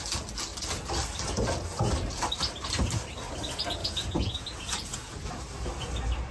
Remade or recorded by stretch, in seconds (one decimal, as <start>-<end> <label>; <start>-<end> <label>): 0.0-3.8 recorded; 3.8-5.4 remade; 5.4-6.3 recorded